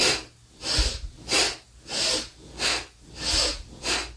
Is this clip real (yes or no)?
yes